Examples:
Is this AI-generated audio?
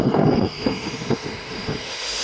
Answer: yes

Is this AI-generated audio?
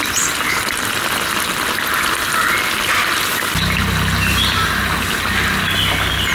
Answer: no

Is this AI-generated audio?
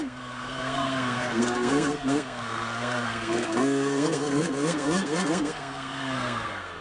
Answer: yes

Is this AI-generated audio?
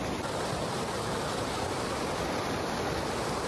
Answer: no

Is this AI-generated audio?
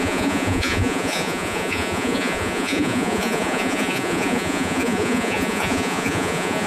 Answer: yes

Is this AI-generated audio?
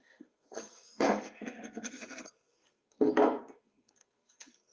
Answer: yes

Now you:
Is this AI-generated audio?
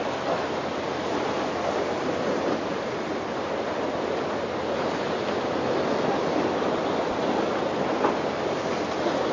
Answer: no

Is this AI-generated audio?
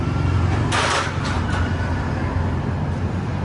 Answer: no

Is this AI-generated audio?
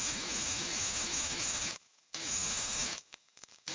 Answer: yes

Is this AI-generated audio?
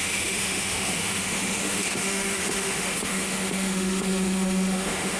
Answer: yes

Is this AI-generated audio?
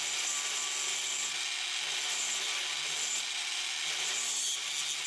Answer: no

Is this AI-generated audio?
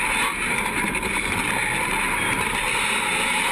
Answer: no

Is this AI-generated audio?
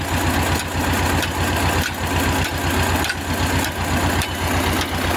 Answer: no